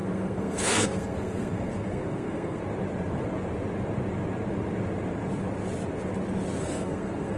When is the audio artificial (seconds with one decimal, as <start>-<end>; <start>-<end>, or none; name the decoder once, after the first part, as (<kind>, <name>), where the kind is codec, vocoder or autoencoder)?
0.0-2.6 (codec, SNAC); 6.6-7.4